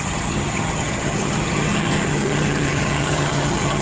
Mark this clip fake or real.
fake